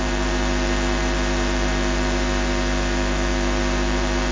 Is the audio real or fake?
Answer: fake